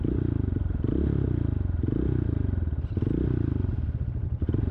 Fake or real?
real